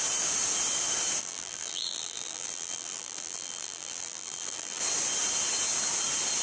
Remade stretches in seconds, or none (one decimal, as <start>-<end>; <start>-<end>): 1.2-4.8